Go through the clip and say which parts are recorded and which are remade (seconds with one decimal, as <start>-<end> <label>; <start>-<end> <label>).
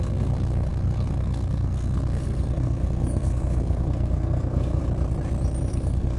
0.0-4.8 remade; 4.8-5.7 recorded; 5.7-6.2 remade